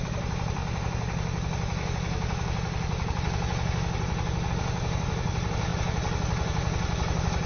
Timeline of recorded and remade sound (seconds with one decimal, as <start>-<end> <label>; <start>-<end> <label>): 0.0-0.6 remade; 0.6-4.5 recorded; 4.5-5.7 remade; 5.7-7.5 recorded